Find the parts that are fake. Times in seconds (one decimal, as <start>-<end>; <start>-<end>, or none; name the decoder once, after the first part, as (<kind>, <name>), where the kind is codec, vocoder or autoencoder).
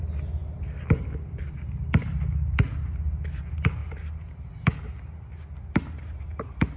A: none